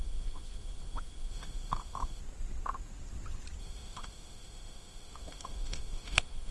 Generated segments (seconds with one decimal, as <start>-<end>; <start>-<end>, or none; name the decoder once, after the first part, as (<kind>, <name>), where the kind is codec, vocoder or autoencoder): 0.0-2.2 (autoencoder, DAC-VAE); 3.6-6.5

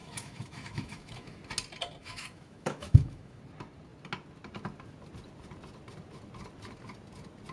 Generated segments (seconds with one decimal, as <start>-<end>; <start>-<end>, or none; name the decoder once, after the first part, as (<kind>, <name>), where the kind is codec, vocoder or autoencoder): 0.0-1.4 (autoencoder, DAC-VAE); 2.0-3.4

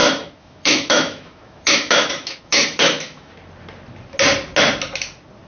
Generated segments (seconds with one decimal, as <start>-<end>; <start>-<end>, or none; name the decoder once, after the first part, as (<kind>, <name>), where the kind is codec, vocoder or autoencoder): 0.0-3.3 (autoencoder, DAC-VAE)

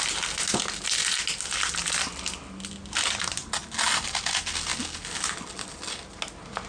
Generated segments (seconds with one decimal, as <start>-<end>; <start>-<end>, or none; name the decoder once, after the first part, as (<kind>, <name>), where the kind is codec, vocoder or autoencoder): none